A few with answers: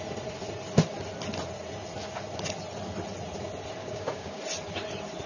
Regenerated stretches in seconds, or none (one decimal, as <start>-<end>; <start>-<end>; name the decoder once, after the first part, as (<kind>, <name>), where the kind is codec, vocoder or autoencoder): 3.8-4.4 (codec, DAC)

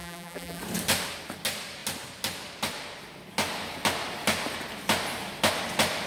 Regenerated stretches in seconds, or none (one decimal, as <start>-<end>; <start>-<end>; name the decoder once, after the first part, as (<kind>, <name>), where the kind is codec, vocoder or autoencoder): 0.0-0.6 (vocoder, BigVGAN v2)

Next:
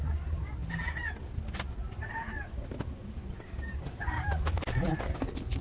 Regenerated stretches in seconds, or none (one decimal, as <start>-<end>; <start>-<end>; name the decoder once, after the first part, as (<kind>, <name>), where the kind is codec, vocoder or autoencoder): none